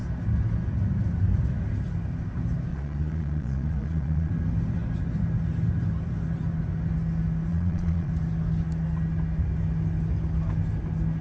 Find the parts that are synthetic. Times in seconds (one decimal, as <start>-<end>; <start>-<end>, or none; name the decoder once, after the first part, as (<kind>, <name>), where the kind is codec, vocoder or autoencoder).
2.7-4.3 (vocoder, Vocos); 7.5-8.1